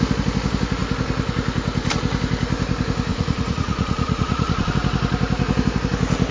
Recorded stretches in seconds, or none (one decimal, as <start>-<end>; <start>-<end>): 0.0-3.1; 4.7-6.3